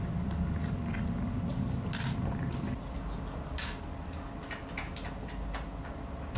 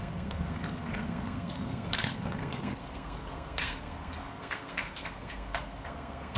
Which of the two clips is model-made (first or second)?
second